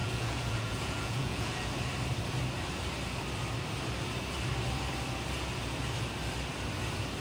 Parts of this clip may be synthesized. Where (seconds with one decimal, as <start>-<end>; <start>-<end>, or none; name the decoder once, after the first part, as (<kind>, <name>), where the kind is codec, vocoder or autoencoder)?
0.0-1.7 (vocoder, Vocos)